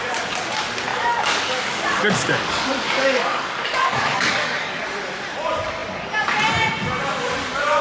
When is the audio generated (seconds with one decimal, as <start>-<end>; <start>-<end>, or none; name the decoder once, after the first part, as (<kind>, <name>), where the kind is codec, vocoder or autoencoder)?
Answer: 0.9-4.8 (codec, DAC)